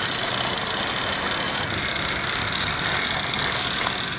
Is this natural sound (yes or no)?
yes